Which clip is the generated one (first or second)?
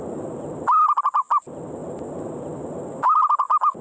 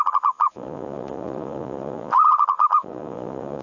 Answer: second